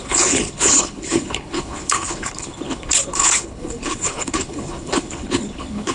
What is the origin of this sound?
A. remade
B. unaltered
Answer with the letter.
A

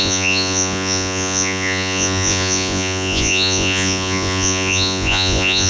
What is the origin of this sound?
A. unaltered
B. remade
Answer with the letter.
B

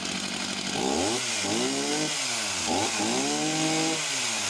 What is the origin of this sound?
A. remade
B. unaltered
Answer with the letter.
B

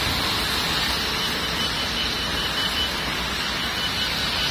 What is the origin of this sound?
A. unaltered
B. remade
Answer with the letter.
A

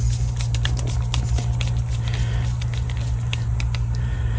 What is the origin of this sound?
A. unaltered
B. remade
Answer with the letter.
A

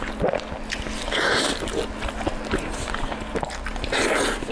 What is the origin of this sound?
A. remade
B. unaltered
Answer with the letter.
B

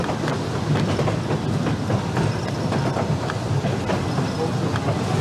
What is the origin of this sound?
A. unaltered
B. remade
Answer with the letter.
A